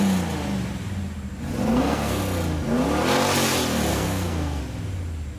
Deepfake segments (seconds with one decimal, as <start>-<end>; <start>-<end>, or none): 1.7-2.2; 3.9-4.6